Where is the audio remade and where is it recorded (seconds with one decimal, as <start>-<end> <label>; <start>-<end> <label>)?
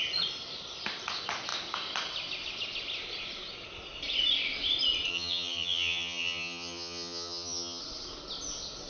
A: 0.0-5.1 recorded; 5.1-7.8 remade; 7.8-8.9 recorded